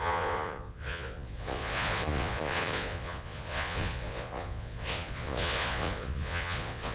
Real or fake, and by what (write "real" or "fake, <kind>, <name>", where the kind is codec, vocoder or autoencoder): fake, vocoder, Vocos